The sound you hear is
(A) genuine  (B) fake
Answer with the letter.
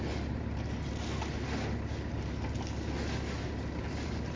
A